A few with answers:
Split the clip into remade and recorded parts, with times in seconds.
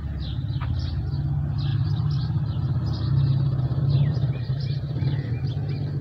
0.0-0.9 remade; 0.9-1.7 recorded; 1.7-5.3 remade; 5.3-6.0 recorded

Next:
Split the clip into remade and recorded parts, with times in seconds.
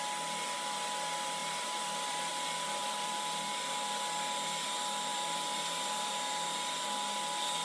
0.0-1.4 recorded; 1.4-2.3 remade; 2.3-2.8 recorded; 2.8-3.5 remade; 3.5-5.1 recorded; 5.1-6.1 remade; 6.1-7.6 recorded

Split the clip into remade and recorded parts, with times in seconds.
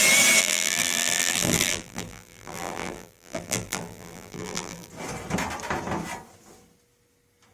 0.0-0.4 recorded; 0.4-4.9 remade; 4.9-7.5 recorded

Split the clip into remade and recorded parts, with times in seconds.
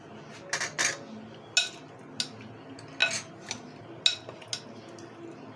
0.0-5.6 recorded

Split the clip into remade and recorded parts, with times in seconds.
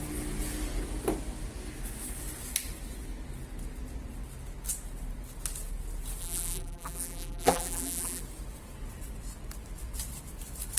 0.0-6.2 recorded; 6.2-8.2 remade; 8.2-10.8 recorded